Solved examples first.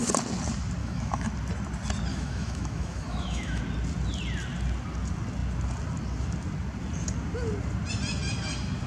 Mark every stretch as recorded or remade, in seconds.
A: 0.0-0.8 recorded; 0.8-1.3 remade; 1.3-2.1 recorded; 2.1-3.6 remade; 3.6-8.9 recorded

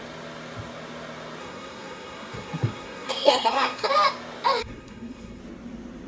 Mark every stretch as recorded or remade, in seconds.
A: 0.0-1.4 recorded; 1.4-3.9 remade; 3.9-4.6 recorded; 4.6-5.4 remade; 5.4-6.1 recorded

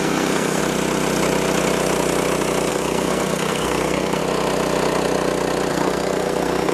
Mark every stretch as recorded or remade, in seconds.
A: 0.0-0.6 remade; 0.6-2.7 recorded; 2.7-4.2 remade; 4.2-5.7 recorded; 5.7-6.7 remade

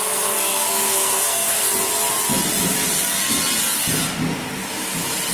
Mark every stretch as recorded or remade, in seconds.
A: 0.0-1.7 remade; 1.7-5.3 recorded

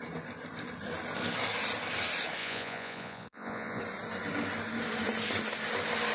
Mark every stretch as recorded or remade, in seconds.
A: 0.0-2.4 recorded; 2.4-3.8 remade; 3.8-6.1 recorded

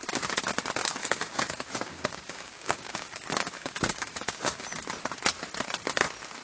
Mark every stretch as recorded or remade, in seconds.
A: 0.0-0.8 recorded; 0.8-4.6 remade; 4.6-6.4 recorded

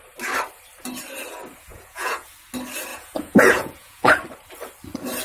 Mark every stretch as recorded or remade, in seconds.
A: 0.0-1.7 recorded; 1.7-2.3 remade; 2.3-2.9 recorded; 2.9-4.1 remade; 4.1-5.2 recorded

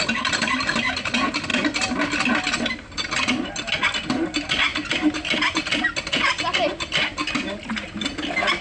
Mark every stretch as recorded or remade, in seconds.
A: 0.0-8.6 recorded